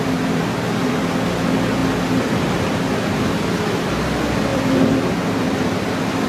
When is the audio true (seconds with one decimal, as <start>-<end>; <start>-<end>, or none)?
none